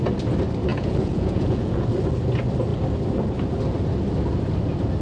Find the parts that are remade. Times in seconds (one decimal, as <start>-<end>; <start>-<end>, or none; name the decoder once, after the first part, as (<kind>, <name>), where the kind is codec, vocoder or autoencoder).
0.7-1.8 (vocoder, Vocos)